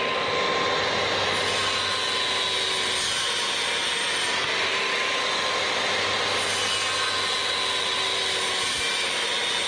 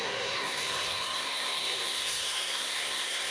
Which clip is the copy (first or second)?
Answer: second